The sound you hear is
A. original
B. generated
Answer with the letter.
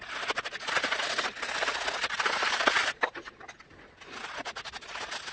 A